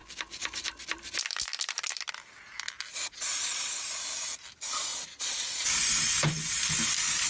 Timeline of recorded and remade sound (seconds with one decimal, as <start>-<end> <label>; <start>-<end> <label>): 0.0-2.9 recorded; 2.9-3.8 remade; 3.8-4.9 recorded; 4.9-5.7 remade; 5.7-7.3 recorded